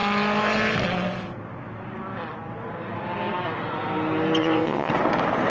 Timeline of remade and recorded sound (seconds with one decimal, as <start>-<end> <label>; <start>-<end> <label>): 0.0-4.4 recorded; 4.4-4.9 remade; 4.9-5.5 recorded